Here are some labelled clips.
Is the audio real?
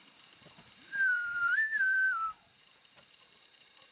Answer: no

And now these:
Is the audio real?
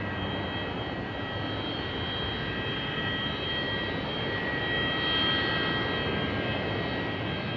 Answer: yes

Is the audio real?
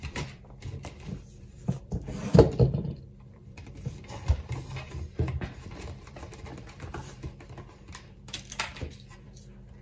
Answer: no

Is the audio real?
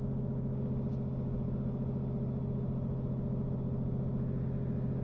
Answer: yes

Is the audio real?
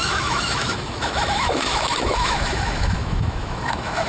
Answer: no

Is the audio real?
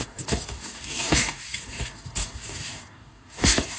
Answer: no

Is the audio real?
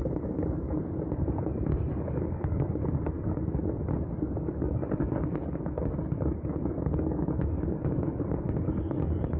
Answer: no